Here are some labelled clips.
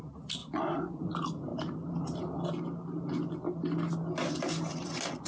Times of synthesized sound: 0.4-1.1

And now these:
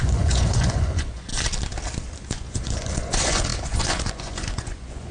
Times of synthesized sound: 0.0-1.3; 2.2-5.1